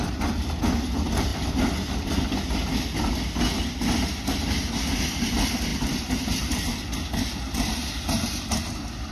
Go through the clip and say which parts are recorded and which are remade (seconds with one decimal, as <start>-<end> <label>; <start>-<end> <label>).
0.0-9.1 recorded